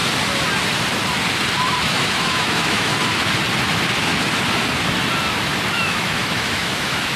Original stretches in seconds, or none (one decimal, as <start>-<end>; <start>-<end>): 0.0-1.8; 2.9-5.7